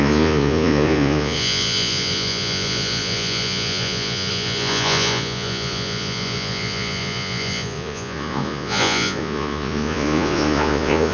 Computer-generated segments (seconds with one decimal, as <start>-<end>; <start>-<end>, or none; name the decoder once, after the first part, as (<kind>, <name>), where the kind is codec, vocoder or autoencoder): 0.0-11.1 (vocoder, Vocos)

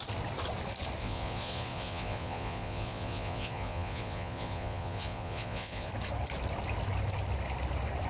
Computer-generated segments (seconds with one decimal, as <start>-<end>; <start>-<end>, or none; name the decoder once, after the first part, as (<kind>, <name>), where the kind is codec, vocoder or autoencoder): 1.0-5.9 (vocoder, Vocos)

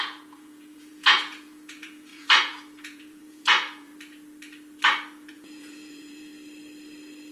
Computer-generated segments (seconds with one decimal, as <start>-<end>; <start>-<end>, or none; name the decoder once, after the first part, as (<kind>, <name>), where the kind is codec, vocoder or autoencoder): 0.0-3.9 (vocoder, Vocos); 5.3-6.3

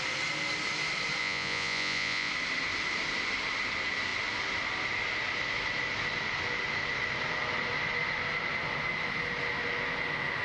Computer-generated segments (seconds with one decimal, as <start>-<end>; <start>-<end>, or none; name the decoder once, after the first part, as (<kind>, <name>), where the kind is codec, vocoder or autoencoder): 1.2-2.3 (vocoder, Vocos)

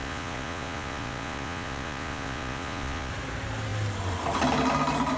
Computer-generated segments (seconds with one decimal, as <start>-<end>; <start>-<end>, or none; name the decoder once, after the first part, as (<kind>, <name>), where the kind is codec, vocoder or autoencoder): 0.0-3.1 (vocoder, Vocos)

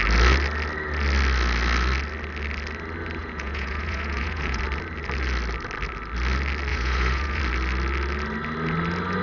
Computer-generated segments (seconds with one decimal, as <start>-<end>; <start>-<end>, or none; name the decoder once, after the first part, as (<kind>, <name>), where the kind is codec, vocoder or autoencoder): 3.2-4.6 (vocoder, Vocos); 6.7-7.4

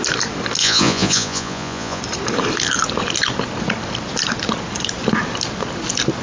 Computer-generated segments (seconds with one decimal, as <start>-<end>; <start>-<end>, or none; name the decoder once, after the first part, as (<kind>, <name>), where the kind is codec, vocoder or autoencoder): 0.6-2.0 (vocoder, Vocos)

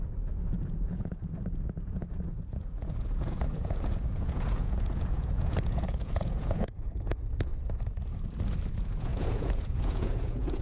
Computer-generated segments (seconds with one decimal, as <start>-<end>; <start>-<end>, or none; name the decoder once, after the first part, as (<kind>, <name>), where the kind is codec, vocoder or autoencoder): 0.0-7.5 (vocoder, Vocos); 8.7-10.6